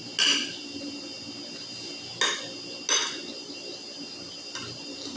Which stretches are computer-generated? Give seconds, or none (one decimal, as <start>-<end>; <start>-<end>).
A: none